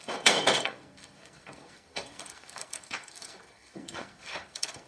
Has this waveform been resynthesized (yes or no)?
yes